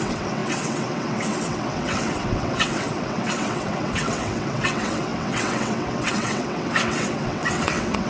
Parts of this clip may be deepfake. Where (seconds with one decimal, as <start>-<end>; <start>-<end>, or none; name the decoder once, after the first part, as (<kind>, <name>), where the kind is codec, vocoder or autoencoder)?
0.0-8.1 (vocoder, WaveNeXt)